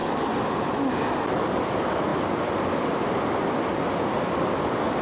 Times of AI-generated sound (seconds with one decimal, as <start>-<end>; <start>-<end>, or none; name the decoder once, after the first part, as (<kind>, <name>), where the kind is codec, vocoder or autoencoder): none